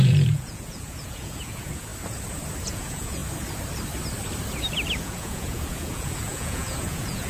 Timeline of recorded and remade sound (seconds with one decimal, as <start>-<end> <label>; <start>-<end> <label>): 0.0-1.9 remade; 1.9-2.6 recorded; 2.6-3.2 remade; 3.2-5.0 recorded; 5.0-7.3 remade